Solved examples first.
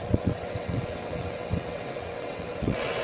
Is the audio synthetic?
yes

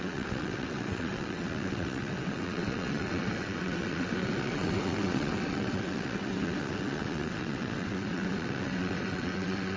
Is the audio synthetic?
yes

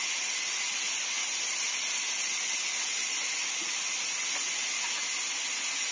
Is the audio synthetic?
no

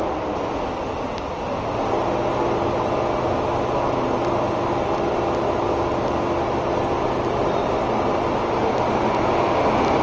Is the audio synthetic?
no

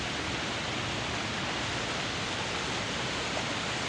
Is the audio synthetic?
no